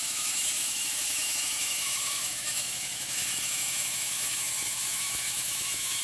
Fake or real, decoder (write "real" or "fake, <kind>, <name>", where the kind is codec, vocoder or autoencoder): fake, autoencoder, DAC-VAE